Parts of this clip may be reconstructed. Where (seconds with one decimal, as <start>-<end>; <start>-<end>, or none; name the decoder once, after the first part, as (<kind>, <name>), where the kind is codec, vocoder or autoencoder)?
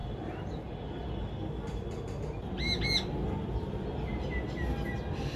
0.0-0.9 (vocoder, BigVGAN v2)